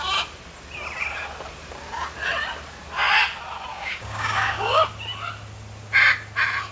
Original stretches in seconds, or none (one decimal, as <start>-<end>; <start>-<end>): 0.0-3.7; 4.8-6.7